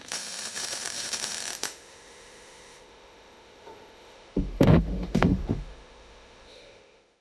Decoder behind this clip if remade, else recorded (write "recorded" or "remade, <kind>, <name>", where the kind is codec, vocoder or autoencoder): remade, autoencoder, DAC-VAE